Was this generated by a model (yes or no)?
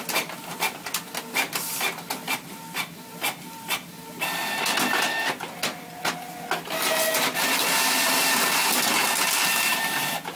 no